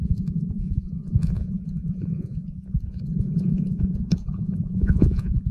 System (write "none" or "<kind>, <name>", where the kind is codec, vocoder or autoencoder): vocoder, Vocos